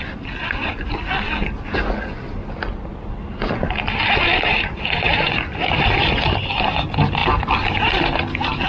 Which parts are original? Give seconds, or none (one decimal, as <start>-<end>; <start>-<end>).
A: 0.0-8.7